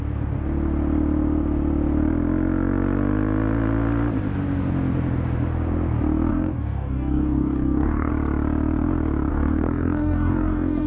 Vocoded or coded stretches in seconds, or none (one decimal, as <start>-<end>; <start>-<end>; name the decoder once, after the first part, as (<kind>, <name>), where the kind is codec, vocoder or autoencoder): 6.3-8.1 (codec, DAC); 9.3-10.9